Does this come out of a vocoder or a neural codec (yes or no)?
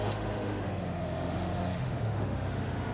yes